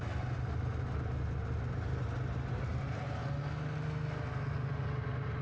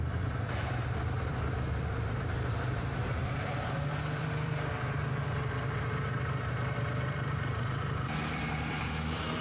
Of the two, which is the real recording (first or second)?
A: first